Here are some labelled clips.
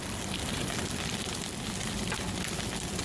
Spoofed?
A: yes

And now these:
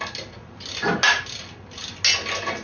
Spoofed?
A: no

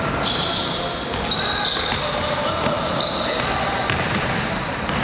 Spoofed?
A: no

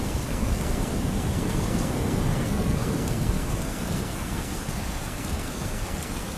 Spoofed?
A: yes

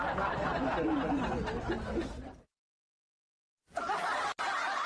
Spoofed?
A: no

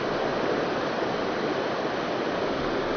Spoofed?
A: no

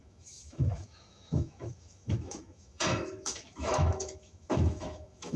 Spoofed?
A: yes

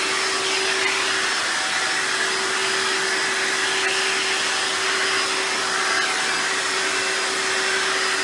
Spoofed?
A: no